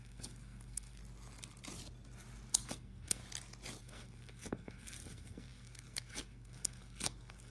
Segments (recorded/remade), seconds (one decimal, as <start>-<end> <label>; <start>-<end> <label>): 0.0-1.0 remade; 1.0-2.5 recorded; 2.5-3.2 remade; 3.2-3.8 recorded; 3.8-7.5 remade